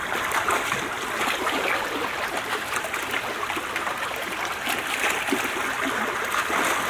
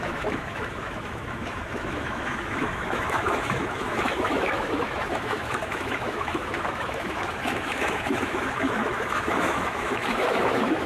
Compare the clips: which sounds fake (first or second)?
second